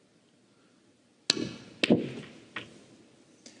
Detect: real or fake real